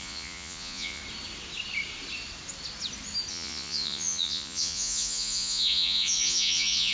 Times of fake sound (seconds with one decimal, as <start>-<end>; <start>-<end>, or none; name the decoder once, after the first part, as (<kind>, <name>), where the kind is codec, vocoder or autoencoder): 0.0-1.0 (vocoder, Vocos); 3.3-6.9